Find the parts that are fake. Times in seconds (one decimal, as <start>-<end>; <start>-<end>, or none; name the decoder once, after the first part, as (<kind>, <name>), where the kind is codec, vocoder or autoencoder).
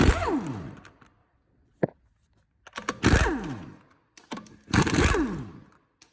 1.2-2.0 (vocoder, Vocos)